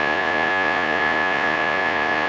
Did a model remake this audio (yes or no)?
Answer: yes